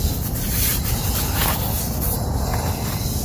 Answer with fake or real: real